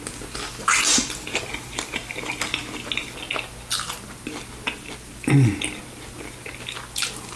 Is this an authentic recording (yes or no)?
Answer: yes